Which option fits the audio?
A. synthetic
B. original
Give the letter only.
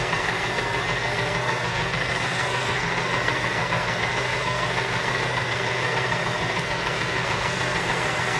A